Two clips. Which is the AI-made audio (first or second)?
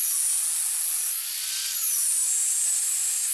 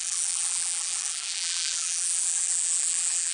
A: second